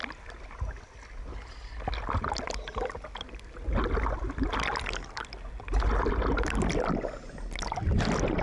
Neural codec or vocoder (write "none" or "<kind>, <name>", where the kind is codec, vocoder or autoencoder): none